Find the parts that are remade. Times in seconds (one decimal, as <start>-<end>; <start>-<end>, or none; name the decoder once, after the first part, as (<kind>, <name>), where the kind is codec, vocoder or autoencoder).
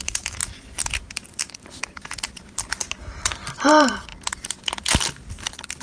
0.0-4.1 (vocoder, BigVGAN v2)